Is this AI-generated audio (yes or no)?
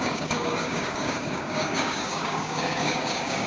yes